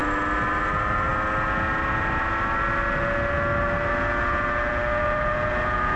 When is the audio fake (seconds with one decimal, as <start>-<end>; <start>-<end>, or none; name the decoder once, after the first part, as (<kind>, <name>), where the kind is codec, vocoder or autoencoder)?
none